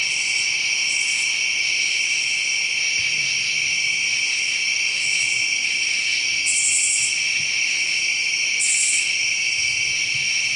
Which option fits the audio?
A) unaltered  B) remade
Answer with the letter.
A